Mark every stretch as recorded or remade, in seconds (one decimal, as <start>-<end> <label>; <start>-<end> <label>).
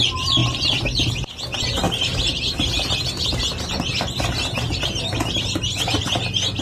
0.0-6.6 recorded